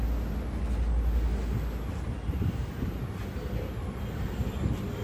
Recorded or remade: recorded